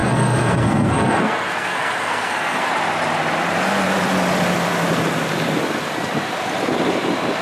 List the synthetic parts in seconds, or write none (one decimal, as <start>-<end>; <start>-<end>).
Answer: 0.0-2.7